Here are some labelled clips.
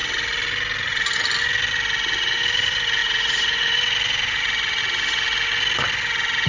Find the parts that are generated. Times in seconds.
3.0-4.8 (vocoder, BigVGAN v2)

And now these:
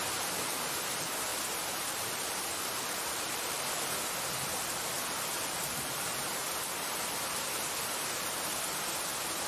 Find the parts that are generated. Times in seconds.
1.3-3.9 (vocoder, BigVGAN v2)

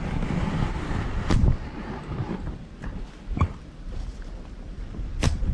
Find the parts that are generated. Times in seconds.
0.0-1.4 (vocoder, BigVGAN v2); 2.0-5.5

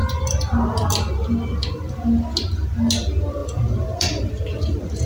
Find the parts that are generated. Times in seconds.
0.0-1.1 (vocoder, BigVGAN v2); 3.4-4.3

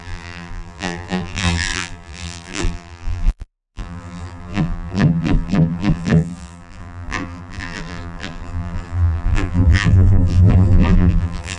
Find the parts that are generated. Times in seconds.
0.0-11.6 (vocoder, BigVGAN v2)

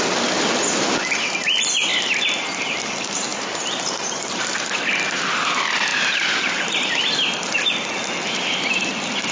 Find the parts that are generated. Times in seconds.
3.3-4.6 (vocoder, BigVGAN v2); 5.9-7.0